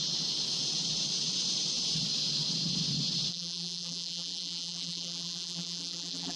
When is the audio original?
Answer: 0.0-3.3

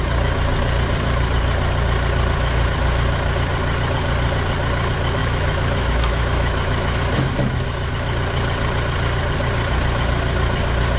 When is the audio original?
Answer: 0.0-5.2; 7.9-11.0

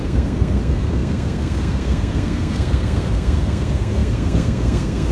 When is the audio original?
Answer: none

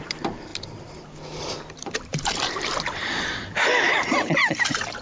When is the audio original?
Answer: 0.5-1.5

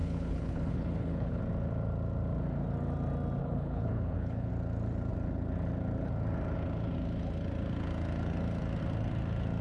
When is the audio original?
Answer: 1.4-3.4; 4.5-9.6